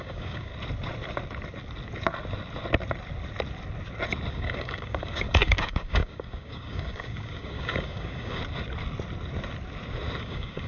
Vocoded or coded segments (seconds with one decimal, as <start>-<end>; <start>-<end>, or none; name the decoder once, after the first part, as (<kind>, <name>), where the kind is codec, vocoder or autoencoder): 0.0-0.5 (codec, DAC); 4.3-8.4; 10.2-10.7